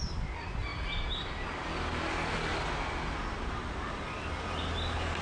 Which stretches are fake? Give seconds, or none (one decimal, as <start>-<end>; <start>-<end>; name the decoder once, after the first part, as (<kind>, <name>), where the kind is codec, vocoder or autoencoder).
none